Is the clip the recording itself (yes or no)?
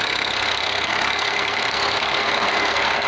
no